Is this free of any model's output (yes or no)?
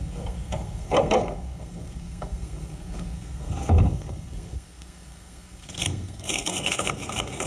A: no